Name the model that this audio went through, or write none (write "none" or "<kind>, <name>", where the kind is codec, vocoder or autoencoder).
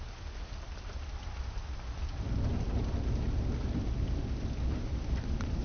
none